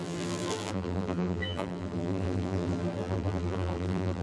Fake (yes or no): yes